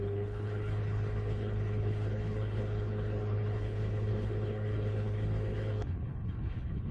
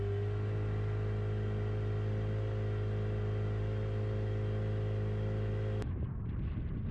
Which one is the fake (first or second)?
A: first